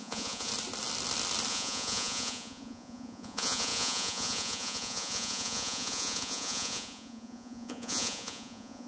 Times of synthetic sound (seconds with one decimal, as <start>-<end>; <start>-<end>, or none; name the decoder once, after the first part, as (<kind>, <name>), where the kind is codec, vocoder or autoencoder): 0.0-0.5 (vocoder, Vocos); 1.5-8.9